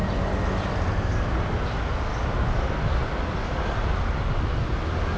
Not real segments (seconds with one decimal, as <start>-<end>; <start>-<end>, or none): none